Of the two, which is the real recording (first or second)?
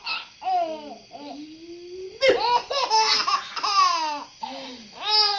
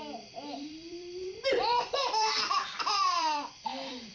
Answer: first